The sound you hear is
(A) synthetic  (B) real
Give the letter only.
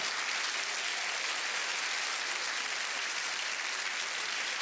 B